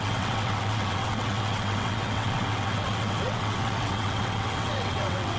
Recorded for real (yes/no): no